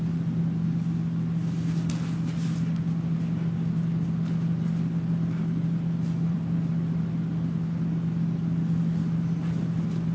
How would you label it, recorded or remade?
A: recorded